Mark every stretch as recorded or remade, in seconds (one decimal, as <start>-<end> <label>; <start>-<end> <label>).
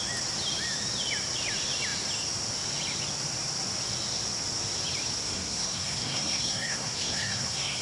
0.0-5.2 recorded; 5.2-7.8 remade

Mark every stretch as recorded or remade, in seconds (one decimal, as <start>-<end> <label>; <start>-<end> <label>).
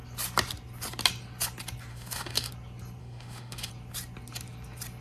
0.0-1.9 recorded; 1.9-2.5 remade; 2.5-3.0 recorded; 3.0-3.7 remade; 3.7-5.0 recorded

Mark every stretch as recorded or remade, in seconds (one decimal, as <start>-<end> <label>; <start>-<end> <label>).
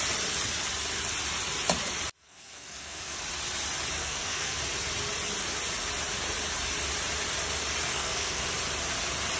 0.0-2.2 recorded; 2.2-3.2 remade; 3.2-4.0 recorded; 4.0-4.6 remade; 4.6-7.9 recorded; 7.9-8.4 remade; 8.4-9.4 recorded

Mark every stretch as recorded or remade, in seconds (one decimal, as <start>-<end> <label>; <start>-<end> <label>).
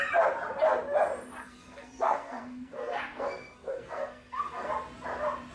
0.0-1.4 recorded; 1.4-4.7 remade; 4.7-5.5 recorded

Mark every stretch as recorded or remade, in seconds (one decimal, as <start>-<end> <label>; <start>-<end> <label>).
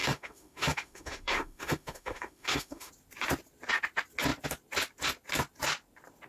0.0-2.9 remade; 2.9-6.3 recorded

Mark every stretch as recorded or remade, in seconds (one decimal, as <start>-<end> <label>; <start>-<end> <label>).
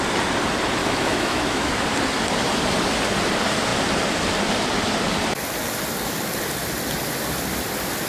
0.0-0.8 recorded; 0.8-1.7 remade; 1.7-8.1 recorded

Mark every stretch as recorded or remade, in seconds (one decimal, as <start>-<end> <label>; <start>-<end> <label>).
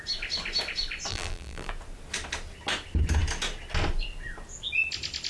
0.0-1.1 recorded; 1.1-1.7 remade; 1.7-5.3 recorded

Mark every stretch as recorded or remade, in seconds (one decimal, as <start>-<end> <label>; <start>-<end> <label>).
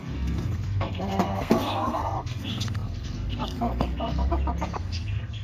0.0-4.3 remade; 4.3-4.8 recorded; 4.8-5.4 remade